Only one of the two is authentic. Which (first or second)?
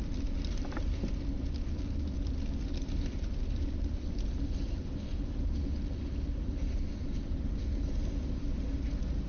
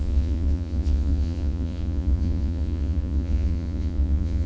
first